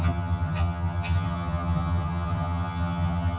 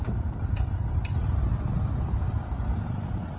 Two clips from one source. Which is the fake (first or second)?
first